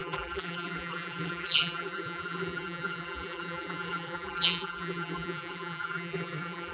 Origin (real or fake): fake